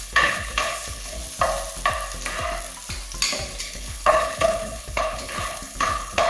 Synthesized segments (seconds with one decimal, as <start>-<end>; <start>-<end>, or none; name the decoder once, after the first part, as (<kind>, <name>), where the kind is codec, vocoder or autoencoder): 0.0-1.2 (codec, HILCodec); 3.6-6.3